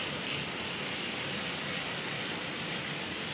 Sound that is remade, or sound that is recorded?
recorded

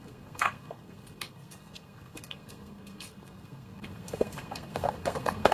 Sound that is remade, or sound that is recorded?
remade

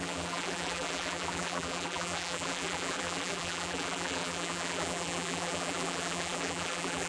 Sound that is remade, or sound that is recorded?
remade